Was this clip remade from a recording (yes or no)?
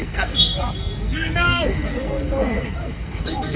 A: yes